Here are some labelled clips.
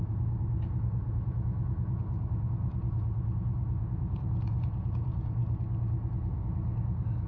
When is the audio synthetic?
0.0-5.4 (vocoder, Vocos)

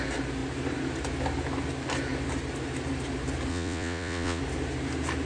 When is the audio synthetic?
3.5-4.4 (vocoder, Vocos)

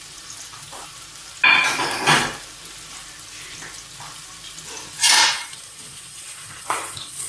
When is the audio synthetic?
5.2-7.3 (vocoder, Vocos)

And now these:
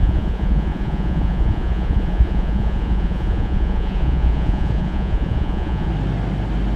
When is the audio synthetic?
0.0-5.9 (vocoder, Vocos)